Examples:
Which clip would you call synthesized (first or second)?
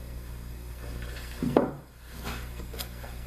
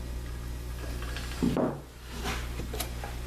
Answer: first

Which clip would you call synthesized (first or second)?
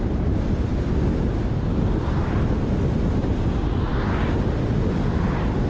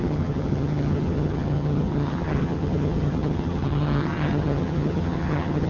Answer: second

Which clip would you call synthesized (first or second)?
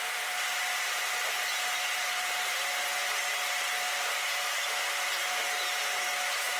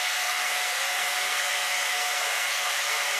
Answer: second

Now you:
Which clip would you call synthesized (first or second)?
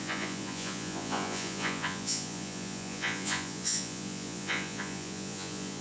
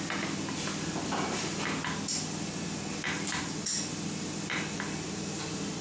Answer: first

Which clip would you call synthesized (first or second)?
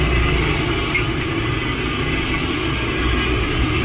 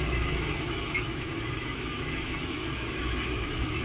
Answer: second